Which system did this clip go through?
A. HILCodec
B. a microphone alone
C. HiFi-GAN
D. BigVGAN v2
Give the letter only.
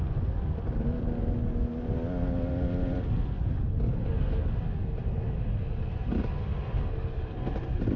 B